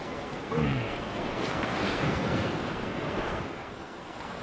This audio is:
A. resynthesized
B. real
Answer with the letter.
A